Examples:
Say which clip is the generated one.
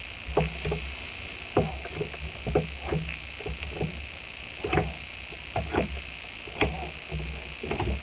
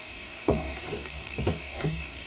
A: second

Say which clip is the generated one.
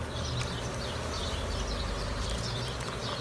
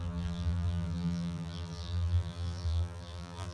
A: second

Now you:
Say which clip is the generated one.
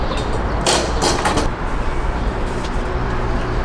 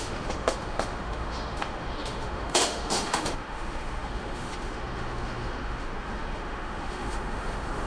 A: second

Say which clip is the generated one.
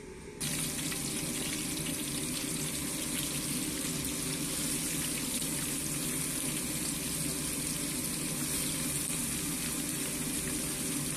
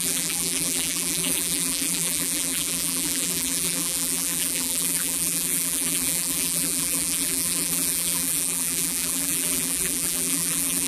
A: second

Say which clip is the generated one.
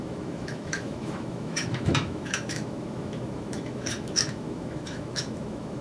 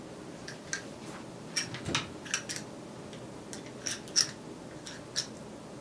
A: first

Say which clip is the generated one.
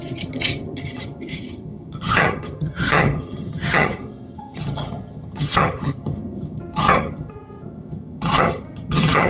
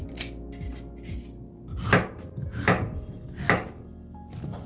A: first